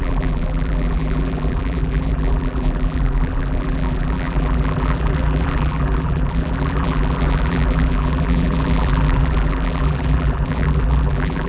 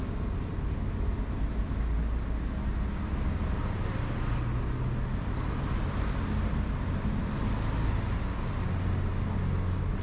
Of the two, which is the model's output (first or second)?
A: first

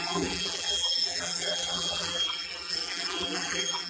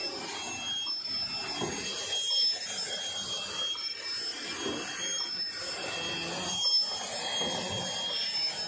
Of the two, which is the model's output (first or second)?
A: first